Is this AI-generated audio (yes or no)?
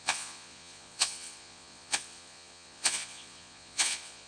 yes